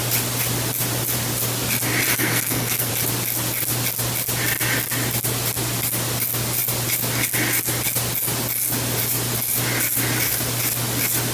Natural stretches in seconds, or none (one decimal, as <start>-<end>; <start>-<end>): 0.0-2.1; 2.9-11.3